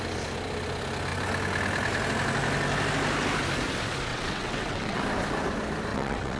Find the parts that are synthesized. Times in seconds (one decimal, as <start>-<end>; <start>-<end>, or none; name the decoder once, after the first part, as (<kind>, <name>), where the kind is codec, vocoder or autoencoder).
4.1-5.0 (vocoder, WaveNeXt); 5.9-6.4